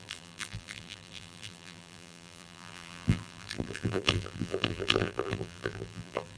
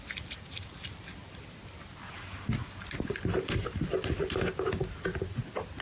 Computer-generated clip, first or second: first